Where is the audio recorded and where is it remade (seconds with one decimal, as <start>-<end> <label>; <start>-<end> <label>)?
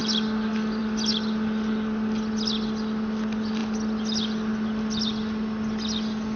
0.0-6.4 recorded